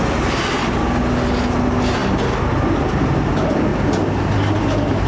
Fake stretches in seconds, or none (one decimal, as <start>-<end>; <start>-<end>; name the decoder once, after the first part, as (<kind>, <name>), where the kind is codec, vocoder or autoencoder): none